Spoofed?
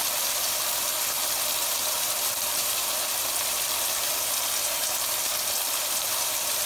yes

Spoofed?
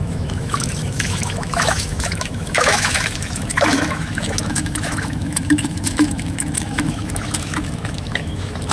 yes